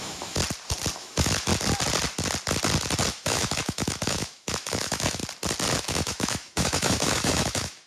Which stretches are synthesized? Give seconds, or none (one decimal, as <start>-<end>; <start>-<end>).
0.0-0.4; 1.0-1.5; 3.1-5.2; 5.8-7.9